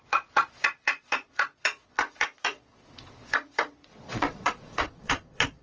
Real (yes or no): no